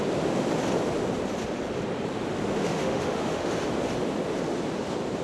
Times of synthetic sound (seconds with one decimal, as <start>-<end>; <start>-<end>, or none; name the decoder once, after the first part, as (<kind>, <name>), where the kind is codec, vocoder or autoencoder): 2.6-3.5 (autoencoder, DAC-VAE)